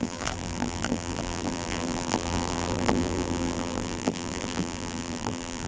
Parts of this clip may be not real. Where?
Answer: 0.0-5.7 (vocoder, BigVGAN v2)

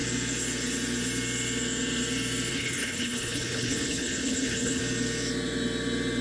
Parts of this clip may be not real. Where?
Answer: 2.5-4.8 (codec, HILCodec)

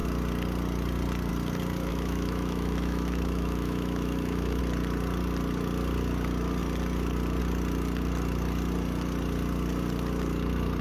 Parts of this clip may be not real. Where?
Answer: 1.9-4.6 (autoencoder, DAC-VAE)

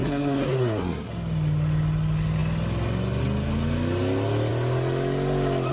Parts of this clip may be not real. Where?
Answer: 0.0-1.1 (codec, SNAC)